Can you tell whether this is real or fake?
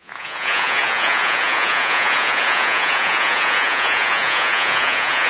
fake